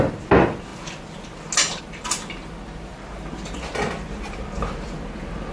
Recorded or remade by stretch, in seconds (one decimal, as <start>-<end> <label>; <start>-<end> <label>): 0.0-2.9 recorded; 2.9-3.5 remade; 3.5-5.5 recorded